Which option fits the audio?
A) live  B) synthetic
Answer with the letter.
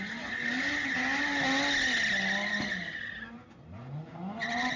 A